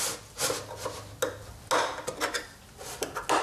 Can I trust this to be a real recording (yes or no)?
yes